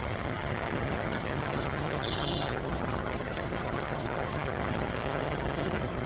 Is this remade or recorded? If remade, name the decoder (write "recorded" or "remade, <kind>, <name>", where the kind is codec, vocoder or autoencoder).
remade, vocoder, HiFi-GAN